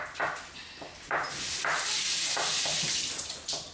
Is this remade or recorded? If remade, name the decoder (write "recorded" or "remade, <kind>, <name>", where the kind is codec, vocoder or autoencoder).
recorded